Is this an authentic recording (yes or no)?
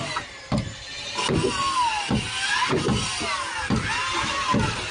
yes